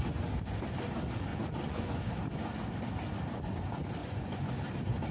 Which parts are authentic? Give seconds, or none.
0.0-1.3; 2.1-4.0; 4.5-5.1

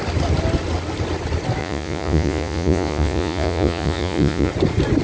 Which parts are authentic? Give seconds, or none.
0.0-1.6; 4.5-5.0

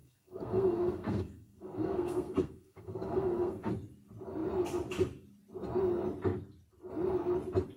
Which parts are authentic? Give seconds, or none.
3.7-7.8

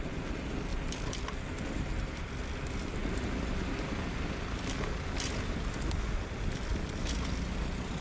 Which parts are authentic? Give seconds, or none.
0.0-0.7; 2.3-8.0